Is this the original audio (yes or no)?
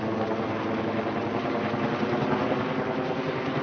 yes